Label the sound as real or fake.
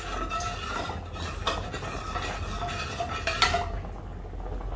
real